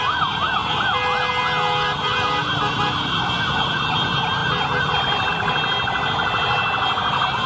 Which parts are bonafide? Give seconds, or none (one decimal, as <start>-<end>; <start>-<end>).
0.0-7.5